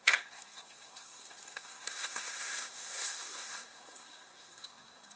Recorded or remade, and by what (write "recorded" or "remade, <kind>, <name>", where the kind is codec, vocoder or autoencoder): remade, codec, SNAC